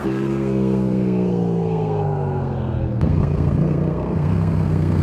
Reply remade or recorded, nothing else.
remade